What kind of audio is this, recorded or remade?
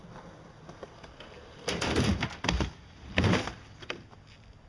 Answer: recorded